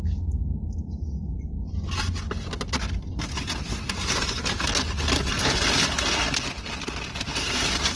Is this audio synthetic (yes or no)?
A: no